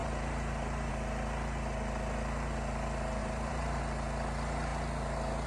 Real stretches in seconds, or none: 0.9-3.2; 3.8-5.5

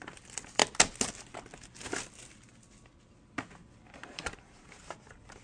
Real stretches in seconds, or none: 0.0-3.6; 4.8-5.4

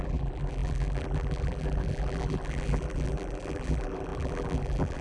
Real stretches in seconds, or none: none

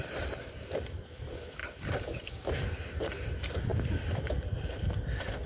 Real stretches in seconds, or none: 1.6-3.1

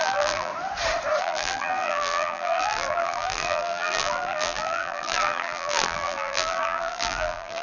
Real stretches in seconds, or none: 0.5-1.2